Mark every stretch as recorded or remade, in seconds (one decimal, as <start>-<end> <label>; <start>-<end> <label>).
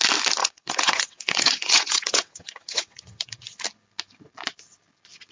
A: 0.0-0.4 recorded; 0.4-3.4 remade; 3.4-5.3 recorded